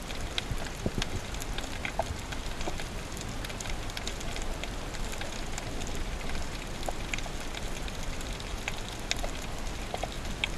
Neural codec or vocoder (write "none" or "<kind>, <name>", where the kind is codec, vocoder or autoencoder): none